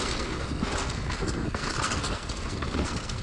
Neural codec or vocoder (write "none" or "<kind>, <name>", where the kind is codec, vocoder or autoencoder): codec, SNAC